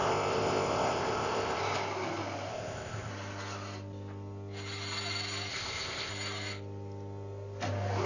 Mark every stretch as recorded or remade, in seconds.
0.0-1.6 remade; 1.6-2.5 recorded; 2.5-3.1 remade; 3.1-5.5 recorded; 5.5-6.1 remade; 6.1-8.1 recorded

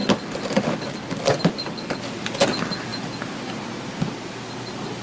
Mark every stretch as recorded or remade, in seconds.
0.0-0.9 remade; 0.9-5.0 recorded

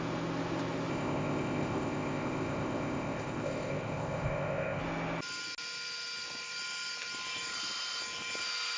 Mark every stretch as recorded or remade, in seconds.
0.0-0.9 recorded; 0.9-4.8 remade; 4.8-8.8 recorded